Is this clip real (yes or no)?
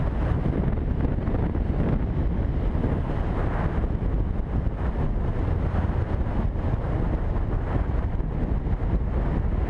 yes